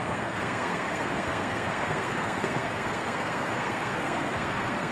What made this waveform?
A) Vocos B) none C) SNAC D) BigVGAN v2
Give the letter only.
C